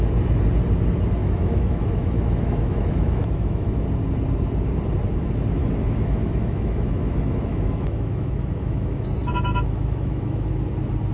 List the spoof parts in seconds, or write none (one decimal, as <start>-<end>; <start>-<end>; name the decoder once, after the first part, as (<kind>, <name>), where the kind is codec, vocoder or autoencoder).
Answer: 1.2-3.8 (autoencoder, DAC-VAE); 5.6-10.5